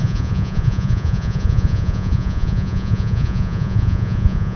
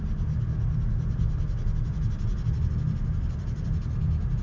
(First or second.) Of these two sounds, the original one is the second